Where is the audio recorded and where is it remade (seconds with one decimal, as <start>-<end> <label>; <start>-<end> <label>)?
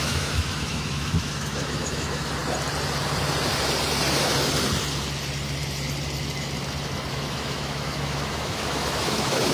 0.0-2.4 remade; 2.4-7.1 recorded; 7.1-9.5 remade